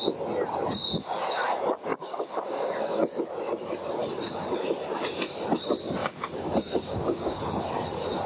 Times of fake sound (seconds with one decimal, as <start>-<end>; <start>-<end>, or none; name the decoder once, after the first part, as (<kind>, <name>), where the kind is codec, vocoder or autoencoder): 1.9-3.1 (codec, DAC); 6.0-7.4